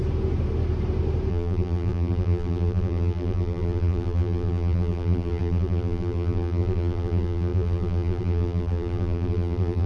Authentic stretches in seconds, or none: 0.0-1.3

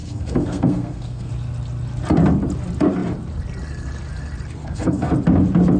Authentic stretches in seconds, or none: 1.3-4.6; 5.1-5.8